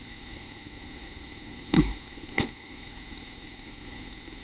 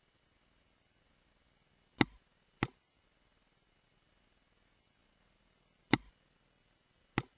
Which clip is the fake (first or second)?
first